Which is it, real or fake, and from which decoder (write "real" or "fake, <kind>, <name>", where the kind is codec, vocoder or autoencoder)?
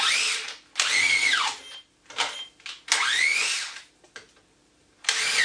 real